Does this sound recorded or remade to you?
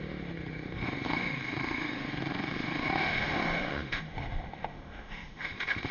remade